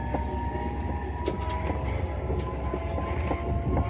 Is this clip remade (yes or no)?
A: no